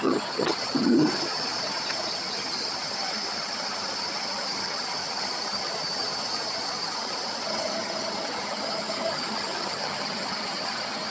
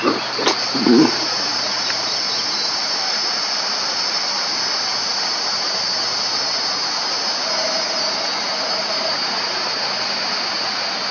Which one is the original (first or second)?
second